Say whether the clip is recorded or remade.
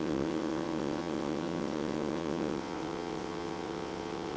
remade